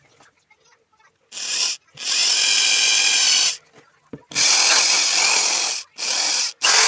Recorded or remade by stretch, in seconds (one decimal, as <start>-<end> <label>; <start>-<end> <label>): 0.0-6.9 recorded